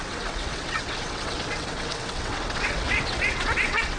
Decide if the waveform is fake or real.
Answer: fake